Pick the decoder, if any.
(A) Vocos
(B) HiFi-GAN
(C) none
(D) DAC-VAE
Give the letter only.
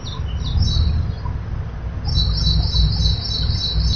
C